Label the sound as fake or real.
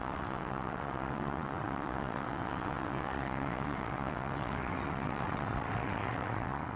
fake